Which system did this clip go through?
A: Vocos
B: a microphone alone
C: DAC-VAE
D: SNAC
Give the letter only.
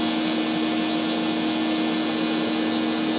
B